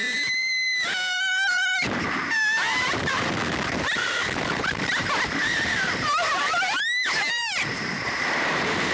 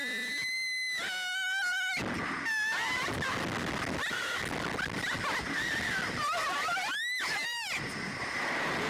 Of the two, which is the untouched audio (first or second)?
second